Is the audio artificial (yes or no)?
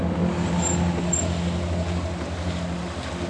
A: no